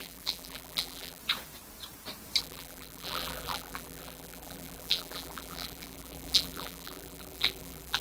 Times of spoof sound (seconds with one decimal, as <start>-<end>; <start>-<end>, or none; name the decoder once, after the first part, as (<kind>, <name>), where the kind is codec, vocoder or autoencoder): 0.0-1.2 (vocoder, BigVGAN v2); 2.4-8.0